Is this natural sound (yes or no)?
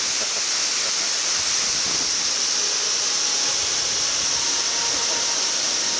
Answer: yes